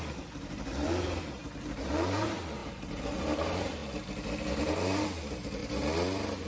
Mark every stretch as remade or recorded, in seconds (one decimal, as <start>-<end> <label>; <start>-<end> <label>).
0.0-3.8 remade; 3.8-4.6 recorded; 4.6-5.6 remade; 5.6-6.5 recorded